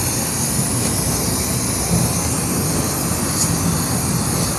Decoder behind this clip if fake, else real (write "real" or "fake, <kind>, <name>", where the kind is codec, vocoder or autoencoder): real